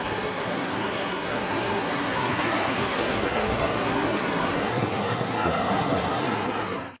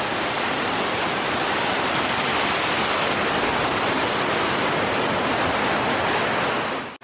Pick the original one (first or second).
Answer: second